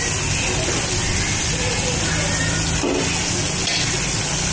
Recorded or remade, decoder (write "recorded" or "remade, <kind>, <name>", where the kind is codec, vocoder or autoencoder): recorded